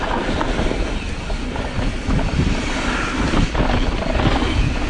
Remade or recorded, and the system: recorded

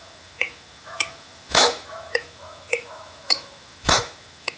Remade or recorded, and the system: remade, autoencoder, DAC-VAE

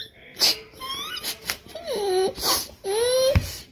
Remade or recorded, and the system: recorded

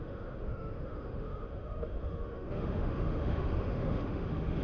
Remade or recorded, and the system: remade, autoencoder, DAC-VAE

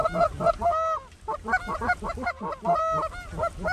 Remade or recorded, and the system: recorded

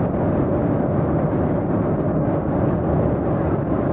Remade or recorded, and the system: recorded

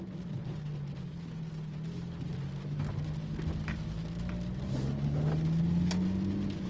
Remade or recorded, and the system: recorded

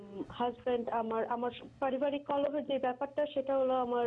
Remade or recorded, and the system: recorded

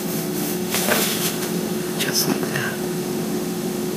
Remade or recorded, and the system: remade, autoencoder, DAC-VAE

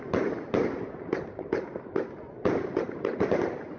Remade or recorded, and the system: recorded